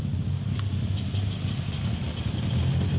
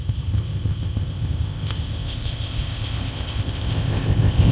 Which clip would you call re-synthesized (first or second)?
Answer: second